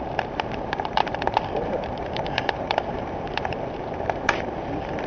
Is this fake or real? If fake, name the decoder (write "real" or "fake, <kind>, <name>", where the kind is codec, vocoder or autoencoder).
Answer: fake, vocoder, BigVGAN v2